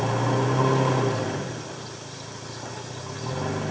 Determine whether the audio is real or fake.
real